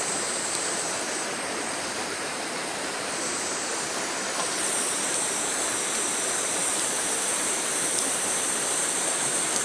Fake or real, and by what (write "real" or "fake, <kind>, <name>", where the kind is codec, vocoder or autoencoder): fake, vocoder, BigVGAN v2